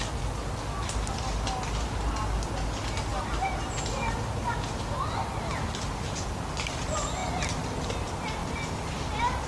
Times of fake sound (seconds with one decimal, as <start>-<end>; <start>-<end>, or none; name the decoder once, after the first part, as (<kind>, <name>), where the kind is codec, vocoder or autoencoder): 7.2-7.9 (vocoder, BigVGAN v2); 8.4-9.1